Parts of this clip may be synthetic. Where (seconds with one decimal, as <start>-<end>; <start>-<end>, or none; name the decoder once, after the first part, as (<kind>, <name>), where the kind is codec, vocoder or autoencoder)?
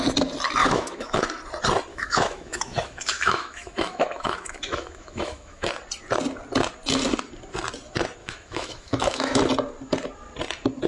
0.6-1.2 (autoencoder, DAC-VAE); 1.9-5.7; 8.2-9.4